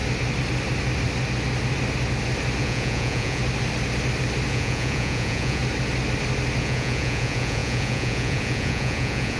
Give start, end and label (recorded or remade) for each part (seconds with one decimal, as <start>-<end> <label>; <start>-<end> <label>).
0.0-2.6 recorded; 2.6-3.4 remade; 3.4-4.5 recorded; 4.5-5.6 remade; 5.6-6.6 recorded; 6.6-9.4 remade